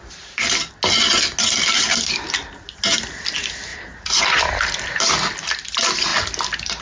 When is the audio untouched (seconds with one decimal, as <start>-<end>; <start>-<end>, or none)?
0.0-3.7; 4.2-6.8